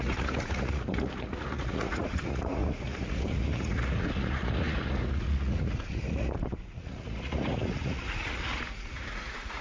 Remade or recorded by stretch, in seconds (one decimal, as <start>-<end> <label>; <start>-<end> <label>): 0.0-9.6 remade